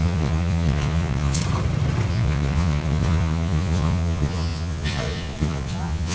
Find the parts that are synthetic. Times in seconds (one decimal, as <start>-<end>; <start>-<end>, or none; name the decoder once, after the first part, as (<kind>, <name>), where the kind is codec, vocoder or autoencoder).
0.0-1.4 (vocoder, Vocos); 2.1-6.1